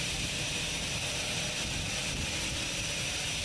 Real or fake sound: fake